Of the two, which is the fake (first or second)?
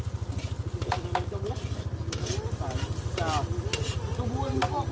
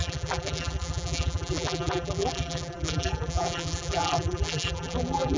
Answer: second